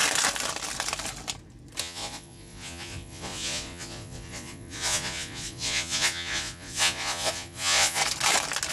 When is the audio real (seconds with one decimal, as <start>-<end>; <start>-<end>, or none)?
0.0-1.8; 8.0-8.7